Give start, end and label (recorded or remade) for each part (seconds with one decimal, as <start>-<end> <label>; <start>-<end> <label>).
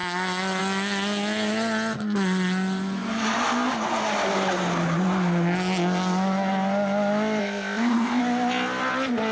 0.0-7.4 recorded; 7.4-8.2 remade; 8.2-9.3 recorded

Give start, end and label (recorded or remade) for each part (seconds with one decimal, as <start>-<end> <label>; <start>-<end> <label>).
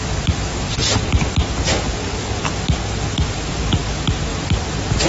0.0-5.1 recorded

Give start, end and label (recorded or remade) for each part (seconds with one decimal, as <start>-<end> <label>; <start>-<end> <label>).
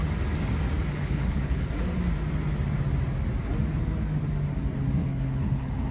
0.0-1.0 recorded; 1.0-1.7 remade; 1.7-5.0 recorded; 5.0-5.9 remade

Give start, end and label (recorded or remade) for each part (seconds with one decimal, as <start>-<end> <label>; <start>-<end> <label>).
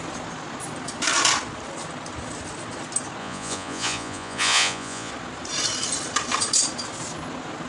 0.0-3.2 recorded; 3.2-5.1 remade; 5.1-7.7 recorded